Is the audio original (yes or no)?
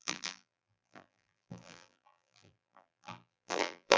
no